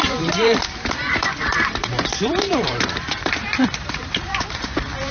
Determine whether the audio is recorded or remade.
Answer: remade